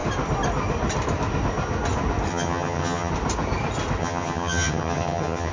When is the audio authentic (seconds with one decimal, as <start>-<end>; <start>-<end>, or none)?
0.0-2.3; 3.1-4.0

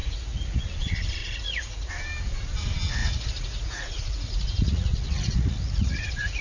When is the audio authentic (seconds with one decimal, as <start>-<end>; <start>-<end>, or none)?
0.6-1.2; 1.9-3.0

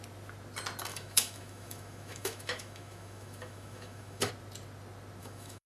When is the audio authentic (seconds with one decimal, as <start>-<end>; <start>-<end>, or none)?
0.0-0.9; 4.3-5.2

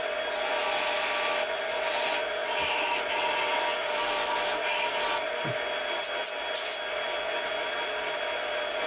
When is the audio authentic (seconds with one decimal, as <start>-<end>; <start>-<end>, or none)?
0.0-8.9

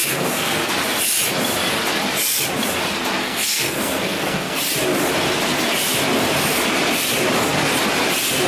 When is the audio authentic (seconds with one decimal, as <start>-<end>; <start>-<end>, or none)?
0.7-3.2; 4.6-8.5

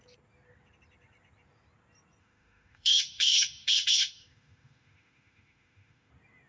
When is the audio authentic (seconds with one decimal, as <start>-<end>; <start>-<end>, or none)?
0.0-2.2; 6.1-6.5

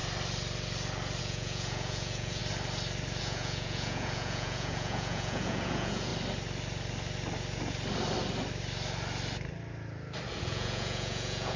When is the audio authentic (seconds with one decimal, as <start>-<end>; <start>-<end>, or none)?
0.0-1.2; 2.4-3.2; 6.1-10.4

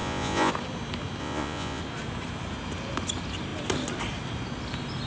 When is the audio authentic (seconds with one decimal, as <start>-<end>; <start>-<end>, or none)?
0.5-1.2; 1.8-5.1